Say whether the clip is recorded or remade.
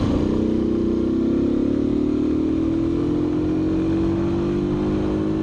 recorded